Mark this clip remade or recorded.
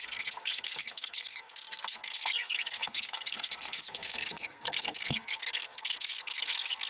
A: remade